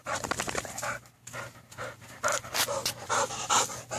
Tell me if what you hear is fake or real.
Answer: real